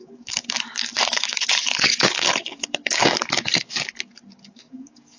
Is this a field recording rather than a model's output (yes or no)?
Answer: no